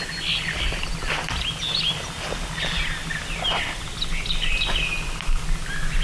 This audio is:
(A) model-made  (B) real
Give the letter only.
B